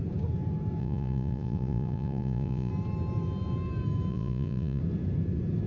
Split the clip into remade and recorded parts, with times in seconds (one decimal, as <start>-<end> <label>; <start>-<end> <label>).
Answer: 0.0-0.8 recorded; 0.8-2.7 remade; 2.7-4.1 recorded; 4.1-4.8 remade; 4.8-5.7 recorded